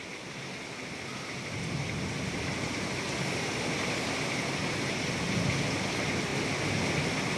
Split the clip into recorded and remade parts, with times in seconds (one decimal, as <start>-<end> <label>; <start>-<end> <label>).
0.0-7.4 recorded